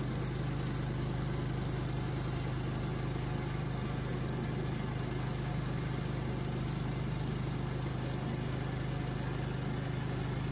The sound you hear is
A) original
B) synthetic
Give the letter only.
A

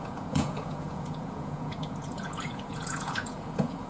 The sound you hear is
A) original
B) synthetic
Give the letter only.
B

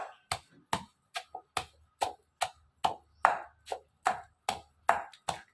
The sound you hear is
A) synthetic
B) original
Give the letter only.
B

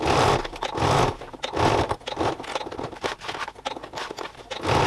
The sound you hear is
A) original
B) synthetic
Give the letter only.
A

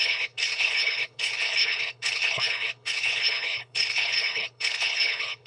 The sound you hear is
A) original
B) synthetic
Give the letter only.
B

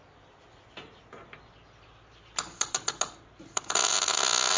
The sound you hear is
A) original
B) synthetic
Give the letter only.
A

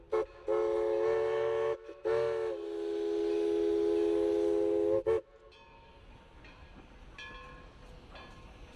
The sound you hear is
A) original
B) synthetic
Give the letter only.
A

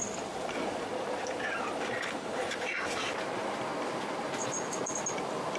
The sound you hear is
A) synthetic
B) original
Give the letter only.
B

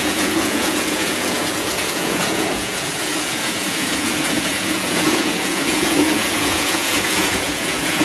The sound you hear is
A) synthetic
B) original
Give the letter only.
A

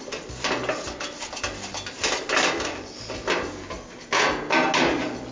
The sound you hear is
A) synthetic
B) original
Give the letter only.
B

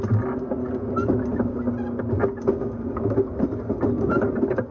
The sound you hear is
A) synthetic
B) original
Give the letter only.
B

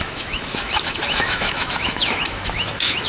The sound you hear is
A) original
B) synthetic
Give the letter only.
B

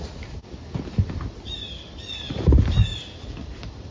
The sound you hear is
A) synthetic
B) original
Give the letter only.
B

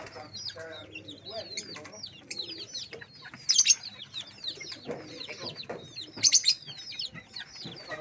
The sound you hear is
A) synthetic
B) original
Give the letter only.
B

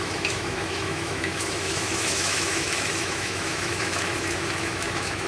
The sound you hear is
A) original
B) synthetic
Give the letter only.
B